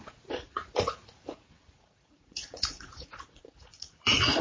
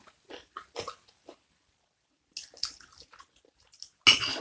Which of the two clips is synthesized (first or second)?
first